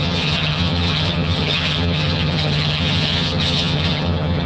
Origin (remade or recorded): remade